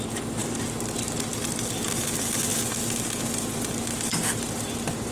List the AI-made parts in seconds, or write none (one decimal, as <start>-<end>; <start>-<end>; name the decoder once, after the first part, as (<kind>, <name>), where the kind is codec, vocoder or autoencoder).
none